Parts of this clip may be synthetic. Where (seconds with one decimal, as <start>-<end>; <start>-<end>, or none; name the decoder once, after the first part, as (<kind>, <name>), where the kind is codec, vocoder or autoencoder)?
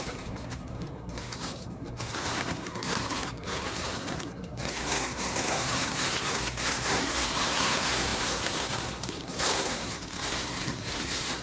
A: 0.0-11.4 (codec, SNAC)